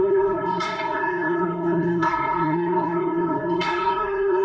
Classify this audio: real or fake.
fake